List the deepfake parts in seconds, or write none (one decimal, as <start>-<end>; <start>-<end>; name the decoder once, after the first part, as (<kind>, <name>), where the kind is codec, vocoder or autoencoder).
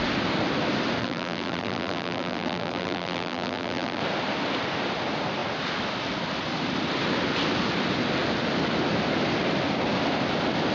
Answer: 1.0-4.0 (vocoder, BigVGAN v2)